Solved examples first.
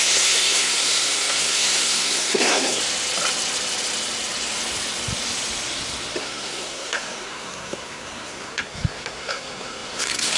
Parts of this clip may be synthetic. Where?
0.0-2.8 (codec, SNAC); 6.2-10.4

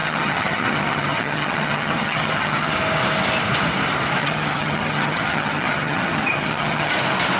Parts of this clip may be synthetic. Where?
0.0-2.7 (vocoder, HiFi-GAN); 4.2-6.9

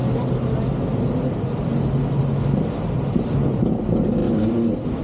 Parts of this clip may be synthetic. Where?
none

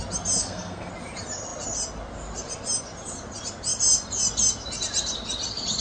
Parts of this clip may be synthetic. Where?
0.4-0.9 (codec, SNAC)

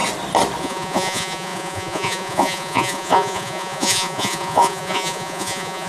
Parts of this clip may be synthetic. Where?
0.6-5.9 (vocoder, Vocos)

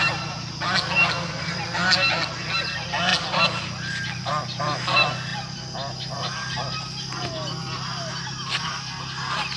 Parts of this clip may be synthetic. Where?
none

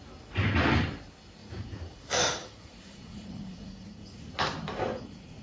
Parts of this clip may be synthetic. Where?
1.4-4.3 (vocoder, Vocos); 4.9-5.4

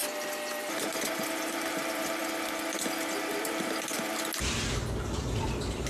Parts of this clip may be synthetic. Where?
0.9-2.2 (vocoder, BigVGAN v2)